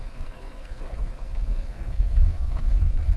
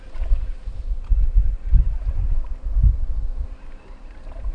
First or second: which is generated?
first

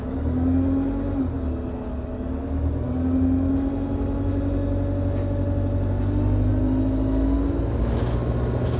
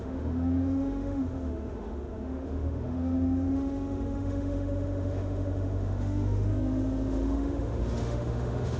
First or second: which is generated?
second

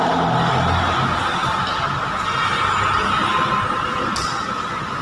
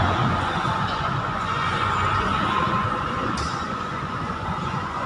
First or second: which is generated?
second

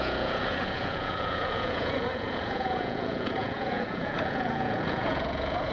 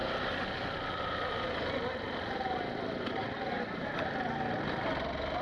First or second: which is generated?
first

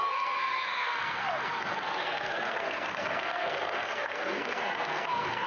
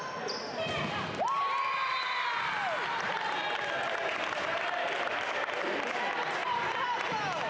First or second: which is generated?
first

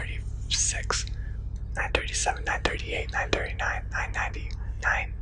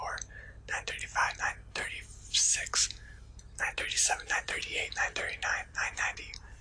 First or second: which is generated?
second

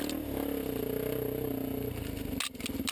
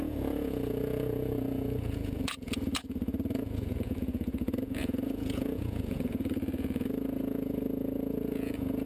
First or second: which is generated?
second